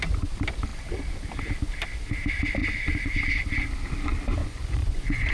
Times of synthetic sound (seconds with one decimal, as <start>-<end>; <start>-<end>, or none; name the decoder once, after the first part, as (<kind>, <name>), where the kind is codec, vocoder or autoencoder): 2.6-3.2 (vocoder, Vocos); 4.4-5.3